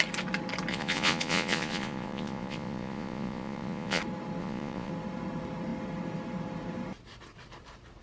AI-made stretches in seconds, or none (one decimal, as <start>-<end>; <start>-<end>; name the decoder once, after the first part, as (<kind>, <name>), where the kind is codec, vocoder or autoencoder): 0.7-4.0 (vocoder, Vocos); 4.4-4.9